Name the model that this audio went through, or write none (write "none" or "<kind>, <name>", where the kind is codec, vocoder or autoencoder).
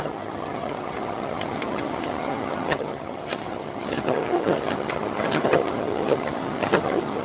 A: vocoder, HiFi-GAN